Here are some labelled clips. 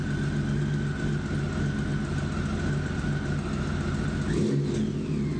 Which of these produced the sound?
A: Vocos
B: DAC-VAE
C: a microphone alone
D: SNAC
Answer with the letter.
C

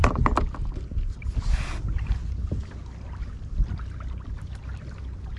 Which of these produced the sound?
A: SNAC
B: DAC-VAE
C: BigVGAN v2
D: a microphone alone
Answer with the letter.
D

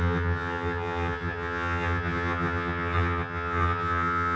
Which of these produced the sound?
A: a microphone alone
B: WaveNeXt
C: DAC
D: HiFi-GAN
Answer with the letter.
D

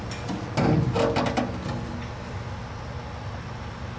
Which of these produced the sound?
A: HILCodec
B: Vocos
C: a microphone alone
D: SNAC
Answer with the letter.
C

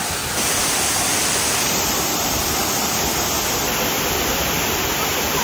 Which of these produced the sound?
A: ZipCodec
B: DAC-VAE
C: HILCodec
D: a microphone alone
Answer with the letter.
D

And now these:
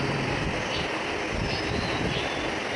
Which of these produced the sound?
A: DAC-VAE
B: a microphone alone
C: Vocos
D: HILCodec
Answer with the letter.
B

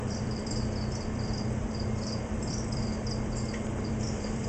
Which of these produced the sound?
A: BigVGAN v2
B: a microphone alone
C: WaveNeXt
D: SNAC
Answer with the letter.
A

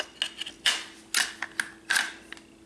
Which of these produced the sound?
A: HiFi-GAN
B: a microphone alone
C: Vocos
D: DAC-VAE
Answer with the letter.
B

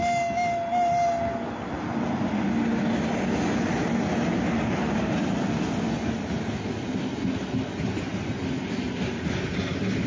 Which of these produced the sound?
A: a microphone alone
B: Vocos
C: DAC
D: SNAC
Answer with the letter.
A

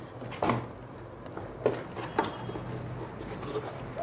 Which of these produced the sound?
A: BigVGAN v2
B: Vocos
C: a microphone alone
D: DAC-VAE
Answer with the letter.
C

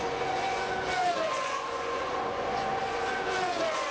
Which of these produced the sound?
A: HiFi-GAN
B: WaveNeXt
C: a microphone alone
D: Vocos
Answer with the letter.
D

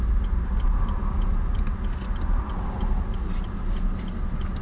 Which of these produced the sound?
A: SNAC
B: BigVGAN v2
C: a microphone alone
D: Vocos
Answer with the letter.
C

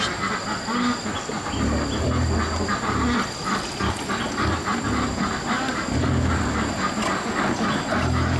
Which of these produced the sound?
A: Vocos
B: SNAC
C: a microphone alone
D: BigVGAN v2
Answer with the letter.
C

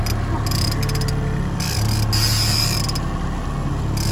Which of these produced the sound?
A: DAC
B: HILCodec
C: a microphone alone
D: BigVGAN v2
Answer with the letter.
C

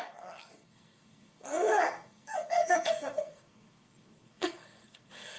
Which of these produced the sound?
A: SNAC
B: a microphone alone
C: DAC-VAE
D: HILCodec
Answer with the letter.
A